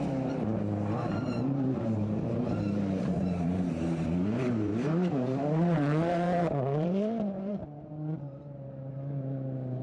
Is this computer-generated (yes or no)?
yes